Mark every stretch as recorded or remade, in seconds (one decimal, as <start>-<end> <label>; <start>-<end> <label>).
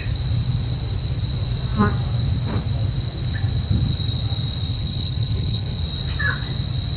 0.0-4.7 recorded; 4.7-5.8 remade; 5.8-7.0 recorded